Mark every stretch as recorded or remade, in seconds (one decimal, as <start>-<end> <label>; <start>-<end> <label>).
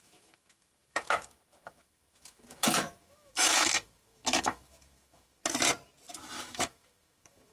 0.0-5.4 remade; 5.4-6.4 recorded; 6.4-7.5 remade